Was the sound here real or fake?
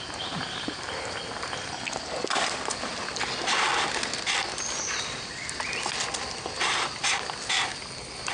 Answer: real